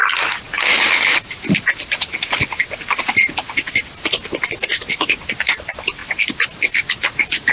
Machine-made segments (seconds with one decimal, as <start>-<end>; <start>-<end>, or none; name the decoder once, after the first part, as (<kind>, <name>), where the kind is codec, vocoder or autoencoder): none